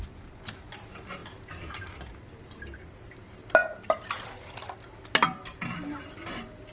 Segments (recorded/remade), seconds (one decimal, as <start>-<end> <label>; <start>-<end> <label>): 0.0-6.7 recorded